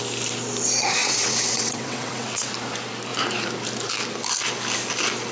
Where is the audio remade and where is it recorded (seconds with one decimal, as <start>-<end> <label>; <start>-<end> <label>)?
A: 0.0-1.0 recorded; 1.0-2.5 remade; 2.5-5.3 recorded